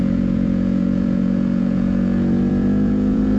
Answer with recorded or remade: remade